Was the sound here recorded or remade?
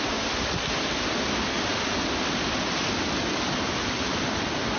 recorded